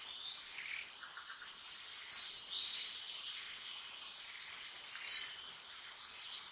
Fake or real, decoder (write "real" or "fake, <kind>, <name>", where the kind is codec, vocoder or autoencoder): real